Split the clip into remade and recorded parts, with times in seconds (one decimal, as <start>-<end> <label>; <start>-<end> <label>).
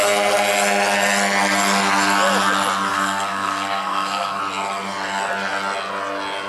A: 0.0-2.9 recorded; 2.9-4.4 remade; 4.4-6.5 recorded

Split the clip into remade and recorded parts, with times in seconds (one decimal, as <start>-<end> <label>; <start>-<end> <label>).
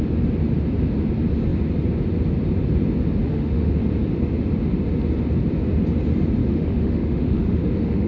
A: 0.0-3.2 recorded; 3.2-3.8 remade; 3.8-6.4 recorded; 6.4-8.1 remade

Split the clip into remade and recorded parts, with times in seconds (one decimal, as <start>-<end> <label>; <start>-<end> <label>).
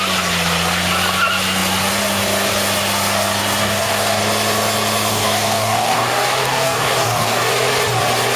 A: 0.0-3.6 recorded; 3.6-4.2 remade; 4.2-5.1 recorded; 5.1-7.5 remade; 7.5-8.4 recorded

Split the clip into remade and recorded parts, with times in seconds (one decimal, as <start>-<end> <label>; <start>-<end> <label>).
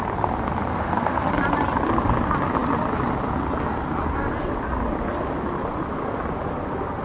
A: 0.0-0.7 recorded; 0.7-1.3 remade; 1.3-7.0 recorded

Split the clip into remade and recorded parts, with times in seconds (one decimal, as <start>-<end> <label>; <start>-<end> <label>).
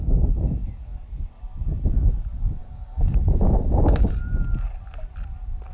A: 0.0-2.6 recorded; 2.6-4.2 remade; 4.2-5.7 recorded